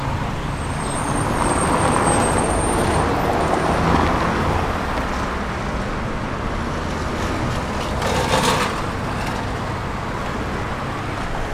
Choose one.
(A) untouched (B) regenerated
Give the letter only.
A